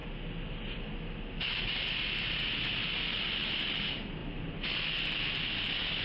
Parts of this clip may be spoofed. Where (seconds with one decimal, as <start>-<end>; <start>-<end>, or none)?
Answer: none